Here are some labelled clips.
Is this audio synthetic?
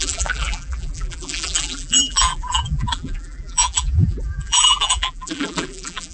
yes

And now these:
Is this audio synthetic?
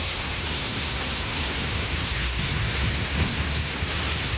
yes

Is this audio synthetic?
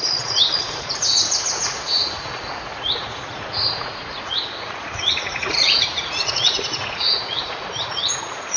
yes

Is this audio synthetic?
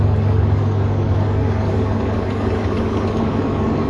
yes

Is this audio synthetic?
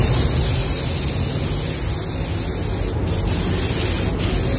no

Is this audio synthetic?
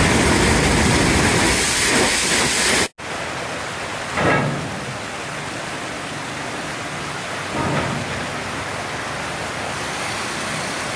no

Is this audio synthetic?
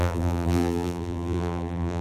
yes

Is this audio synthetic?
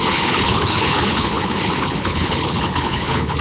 yes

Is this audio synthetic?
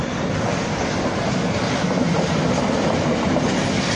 no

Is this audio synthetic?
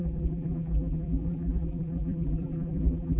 yes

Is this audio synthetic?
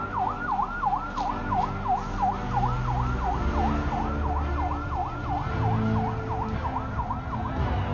no